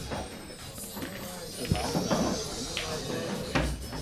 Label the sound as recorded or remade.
recorded